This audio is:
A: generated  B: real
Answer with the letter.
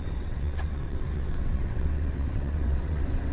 A